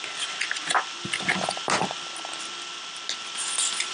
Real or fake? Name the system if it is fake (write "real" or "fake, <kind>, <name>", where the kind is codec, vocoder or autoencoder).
real